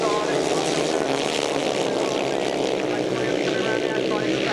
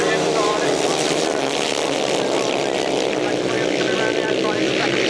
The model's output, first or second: second